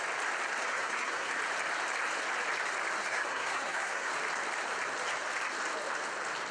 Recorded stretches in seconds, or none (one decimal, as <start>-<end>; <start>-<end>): 0.0-0.7; 1.3-3.0; 4.1-6.5